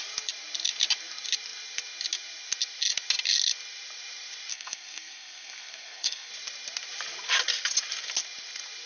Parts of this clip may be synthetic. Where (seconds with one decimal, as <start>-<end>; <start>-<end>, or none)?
4.5-6.3